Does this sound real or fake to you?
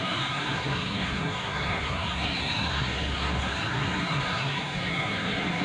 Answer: fake